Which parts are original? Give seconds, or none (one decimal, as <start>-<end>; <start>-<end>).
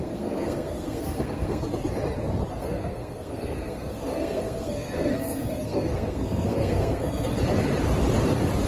1.6-2.5; 7.3-8.7